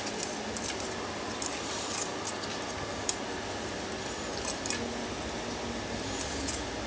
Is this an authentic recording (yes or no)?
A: yes